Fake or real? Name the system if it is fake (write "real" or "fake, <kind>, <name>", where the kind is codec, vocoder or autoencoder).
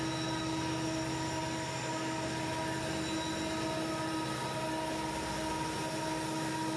real